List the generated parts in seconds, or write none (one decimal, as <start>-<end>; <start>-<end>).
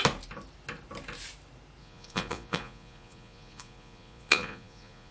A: 1.8-5.1